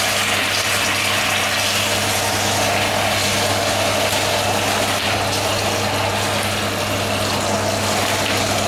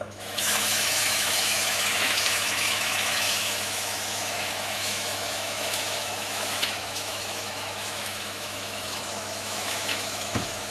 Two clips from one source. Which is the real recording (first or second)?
first